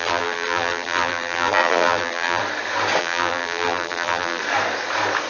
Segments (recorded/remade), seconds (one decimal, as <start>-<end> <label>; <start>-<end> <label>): 0.0-2.4 remade; 2.4-3.0 recorded; 3.0-4.4 remade; 4.4-5.3 recorded